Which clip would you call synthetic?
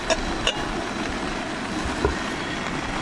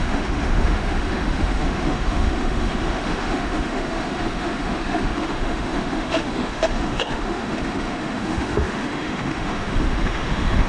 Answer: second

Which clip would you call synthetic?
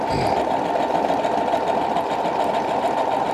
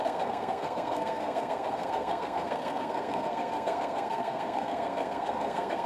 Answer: second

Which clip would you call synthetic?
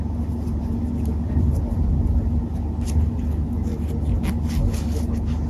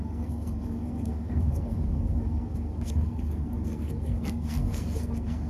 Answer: second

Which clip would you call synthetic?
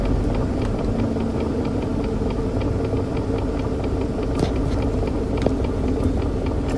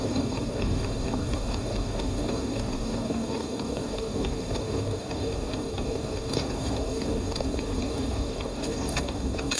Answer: second